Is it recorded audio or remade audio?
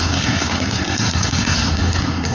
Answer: remade